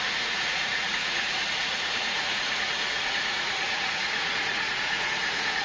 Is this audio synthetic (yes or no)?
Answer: yes